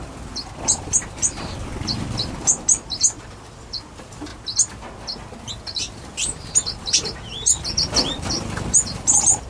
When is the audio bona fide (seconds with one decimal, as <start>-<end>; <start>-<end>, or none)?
4.3-5.5